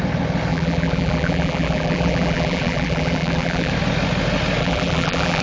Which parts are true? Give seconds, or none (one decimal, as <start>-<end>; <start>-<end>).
0.0-0.5; 3.7-4.6